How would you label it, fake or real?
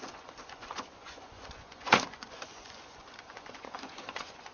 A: fake